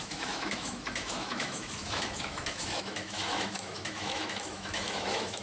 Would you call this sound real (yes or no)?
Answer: no